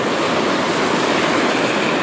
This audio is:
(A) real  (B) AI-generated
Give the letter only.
A